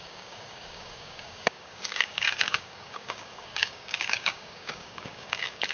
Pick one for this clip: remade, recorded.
remade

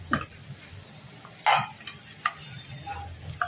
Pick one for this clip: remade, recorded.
recorded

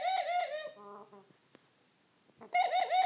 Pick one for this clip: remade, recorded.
recorded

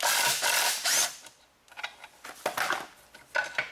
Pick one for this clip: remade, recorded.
recorded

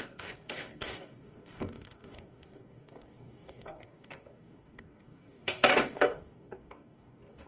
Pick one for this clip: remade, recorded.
remade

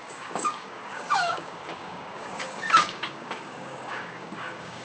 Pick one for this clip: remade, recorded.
remade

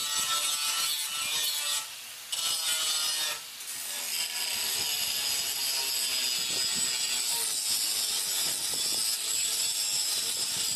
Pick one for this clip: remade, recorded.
recorded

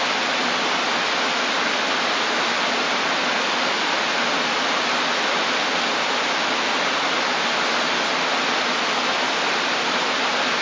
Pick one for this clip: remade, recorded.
recorded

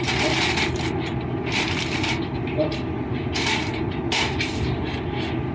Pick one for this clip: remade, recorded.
recorded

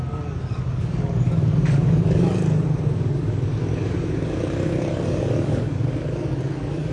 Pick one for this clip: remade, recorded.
remade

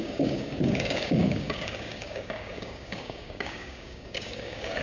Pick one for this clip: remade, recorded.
remade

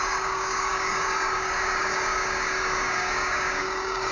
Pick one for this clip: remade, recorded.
remade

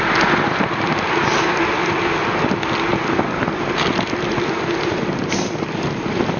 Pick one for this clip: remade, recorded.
recorded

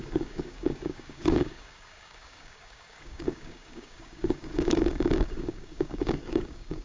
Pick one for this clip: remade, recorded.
remade